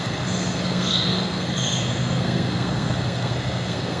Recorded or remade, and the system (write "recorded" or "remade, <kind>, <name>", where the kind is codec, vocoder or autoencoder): remade, codec, SNAC